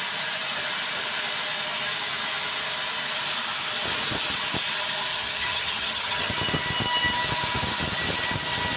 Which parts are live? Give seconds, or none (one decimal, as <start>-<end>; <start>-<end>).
0.0-5.1; 6.3-8.8